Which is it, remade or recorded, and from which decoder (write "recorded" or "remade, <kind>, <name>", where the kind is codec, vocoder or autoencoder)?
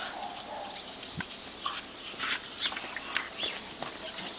recorded